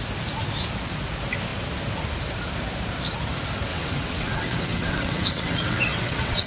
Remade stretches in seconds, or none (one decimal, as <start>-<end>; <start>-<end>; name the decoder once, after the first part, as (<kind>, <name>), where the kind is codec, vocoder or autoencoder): 3.7-6.5 (vocoder, WaveNeXt)